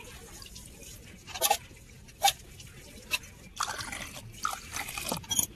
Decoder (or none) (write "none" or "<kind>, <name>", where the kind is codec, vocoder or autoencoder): none